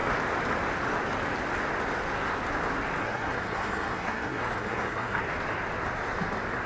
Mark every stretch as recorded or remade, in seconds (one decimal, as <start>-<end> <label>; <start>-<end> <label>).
0.0-3.0 recorded; 3.0-5.2 remade; 5.2-6.7 recorded